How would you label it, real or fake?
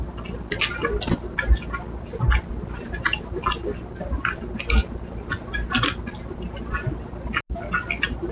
real